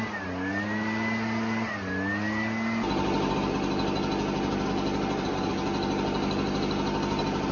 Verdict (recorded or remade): recorded